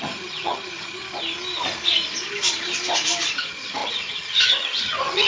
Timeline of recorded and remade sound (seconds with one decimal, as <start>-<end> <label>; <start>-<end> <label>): 0.0-1.0 remade; 1.0-3.4 recorded; 3.4-5.3 remade